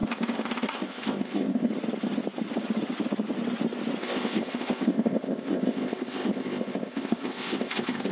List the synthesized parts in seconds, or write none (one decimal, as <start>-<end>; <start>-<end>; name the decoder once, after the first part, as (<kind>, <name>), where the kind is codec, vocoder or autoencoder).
0.0-1.7 (codec, ZipCodec); 4.0-8.1